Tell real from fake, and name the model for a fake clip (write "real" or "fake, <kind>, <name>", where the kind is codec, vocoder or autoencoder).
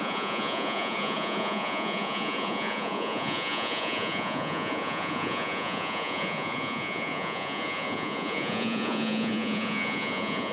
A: fake, vocoder, Vocos